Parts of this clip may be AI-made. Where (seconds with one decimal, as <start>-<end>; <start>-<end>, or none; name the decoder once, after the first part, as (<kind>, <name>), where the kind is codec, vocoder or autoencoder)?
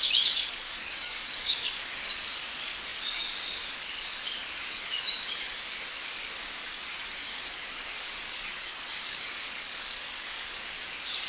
0.0-11.3 (codec, DAC)